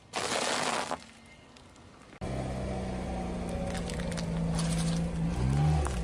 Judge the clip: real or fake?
real